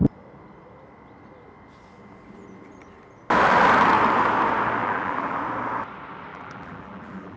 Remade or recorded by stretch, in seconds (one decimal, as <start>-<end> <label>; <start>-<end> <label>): 0.0-4.8 recorded; 4.8-5.4 remade; 5.4-6.3 recorded; 6.3-7.4 remade